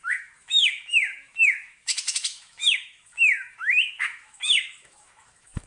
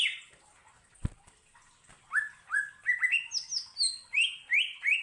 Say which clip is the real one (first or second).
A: second